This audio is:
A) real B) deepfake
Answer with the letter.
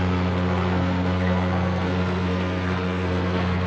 B